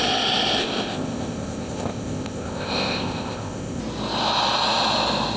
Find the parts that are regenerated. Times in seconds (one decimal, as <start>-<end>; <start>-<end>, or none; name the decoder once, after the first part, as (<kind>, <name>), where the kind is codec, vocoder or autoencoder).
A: 0.6-3.8 (codec, ZipCodec)